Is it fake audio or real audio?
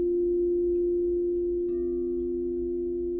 real